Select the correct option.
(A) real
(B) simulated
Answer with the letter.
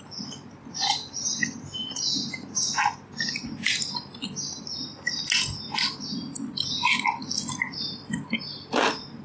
A